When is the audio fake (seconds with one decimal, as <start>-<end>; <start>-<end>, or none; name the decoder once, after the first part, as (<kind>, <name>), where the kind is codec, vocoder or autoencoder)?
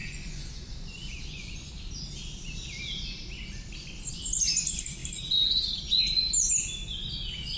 0.0-1.7 (vocoder, Vocos)